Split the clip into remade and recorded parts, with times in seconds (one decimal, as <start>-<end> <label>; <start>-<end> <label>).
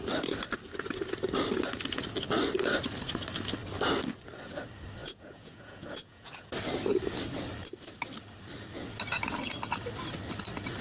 0.0-5.0 recorded; 5.0-6.5 remade; 6.5-10.8 recorded